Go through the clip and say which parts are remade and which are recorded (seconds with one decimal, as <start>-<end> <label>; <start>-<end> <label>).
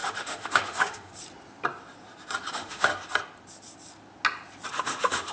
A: 0.0-1.1 remade; 1.1-2.5 recorded; 2.5-2.9 remade; 2.9-4.7 recorded; 4.7-5.3 remade